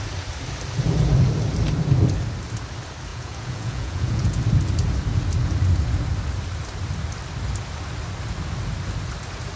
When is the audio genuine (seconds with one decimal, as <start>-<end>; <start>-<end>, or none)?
0.0-3.1; 4.4-9.6